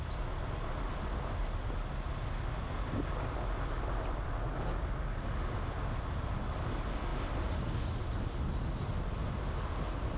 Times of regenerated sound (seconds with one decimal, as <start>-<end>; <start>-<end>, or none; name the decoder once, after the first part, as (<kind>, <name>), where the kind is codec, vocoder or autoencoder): none